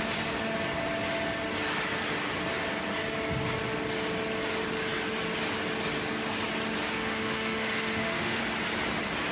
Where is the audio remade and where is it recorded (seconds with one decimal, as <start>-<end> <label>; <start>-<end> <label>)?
0.0-6.9 recorded; 6.9-8.4 remade; 8.4-9.3 recorded